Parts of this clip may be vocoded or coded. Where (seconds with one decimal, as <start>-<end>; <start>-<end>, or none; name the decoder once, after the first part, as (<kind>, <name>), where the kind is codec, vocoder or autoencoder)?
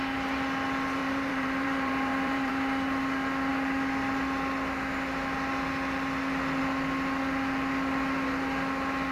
1.0-2.5 (vocoder, BigVGAN v2)